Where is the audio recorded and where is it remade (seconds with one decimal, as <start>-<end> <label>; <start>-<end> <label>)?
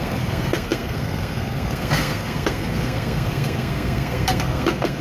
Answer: 0.0-5.0 remade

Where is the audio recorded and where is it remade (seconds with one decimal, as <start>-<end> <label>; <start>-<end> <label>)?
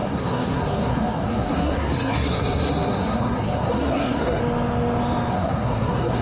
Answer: 0.0-4.4 remade; 4.4-5.3 recorded; 5.3-6.2 remade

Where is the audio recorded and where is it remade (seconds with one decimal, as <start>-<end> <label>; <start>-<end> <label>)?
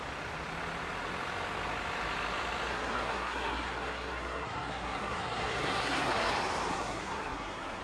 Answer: 0.0-2.7 recorded; 2.7-6.3 remade; 6.3-6.7 recorded; 6.7-7.8 remade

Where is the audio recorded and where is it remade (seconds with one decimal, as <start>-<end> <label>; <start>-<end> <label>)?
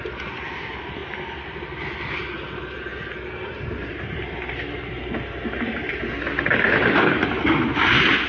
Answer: 0.0-8.3 recorded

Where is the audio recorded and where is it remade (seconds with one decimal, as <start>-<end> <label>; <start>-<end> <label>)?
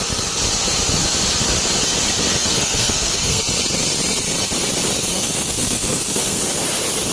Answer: 0.0-2.4 recorded; 2.4-3.4 remade; 3.4-5.1 recorded; 5.1-6.4 remade; 6.4-7.1 recorded